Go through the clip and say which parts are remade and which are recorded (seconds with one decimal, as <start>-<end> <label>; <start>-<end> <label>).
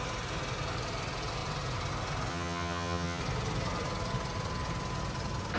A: 0.0-2.3 recorded; 2.3-3.2 remade; 3.2-5.6 recorded